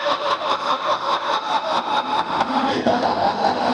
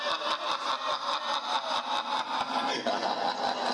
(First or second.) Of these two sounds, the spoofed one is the first